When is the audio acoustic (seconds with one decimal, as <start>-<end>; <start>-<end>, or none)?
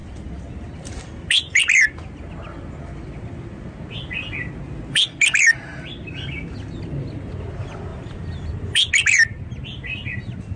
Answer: 0.7-7.9; 8.9-10.6